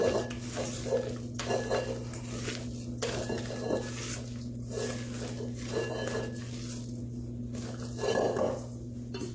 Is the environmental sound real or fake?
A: real